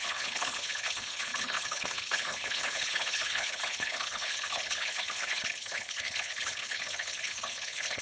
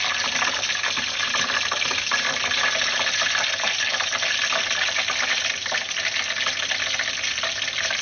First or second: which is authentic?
second